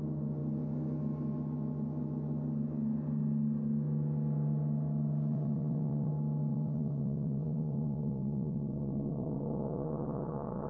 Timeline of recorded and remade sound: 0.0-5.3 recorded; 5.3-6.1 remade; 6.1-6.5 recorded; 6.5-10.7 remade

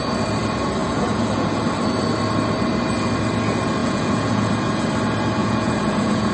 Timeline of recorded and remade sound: 0.0-0.8 recorded; 0.8-1.6 remade; 1.6-3.8 recorded; 3.8-4.5 remade; 4.5-5.4 recorded; 5.4-6.3 remade

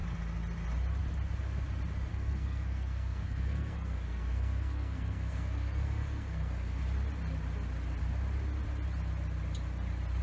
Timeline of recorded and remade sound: 0.0-2.1 recorded; 2.1-6.8 remade; 6.8-10.2 recorded

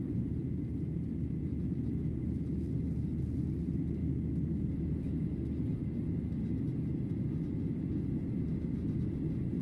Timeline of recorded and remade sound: 0.0-0.4 recorded; 0.4-1.9 remade; 1.9-5.8 recorded; 5.8-6.7 remade; 6.7-9.6 recorded

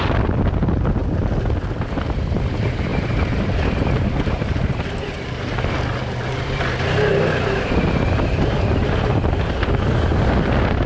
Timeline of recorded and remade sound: 0.0-2.9 recorded; 2.9-5.3 remade; 5.3-10.9 recorded

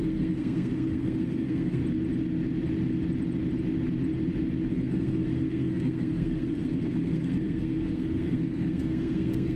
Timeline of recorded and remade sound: 0.0-1.8 remade; 1.8-4.7 recorded; 4.7-9.6 remade

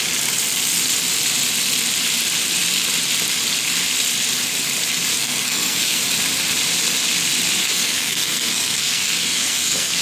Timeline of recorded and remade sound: 0.0-5.1 recorded; 5.1-6.0 remade; 6.0-7.6 recorded; 7.6-10.0 remade

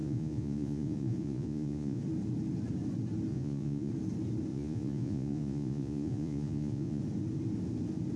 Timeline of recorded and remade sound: 0.0-2.0 remade; 2.0-3.3 recorded; 3.3-3.9 remade; 3.9-4.5 recorded; 4.5-7.0 remade; 7.0-8.2 recorded